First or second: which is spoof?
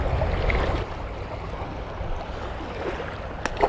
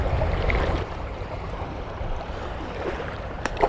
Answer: second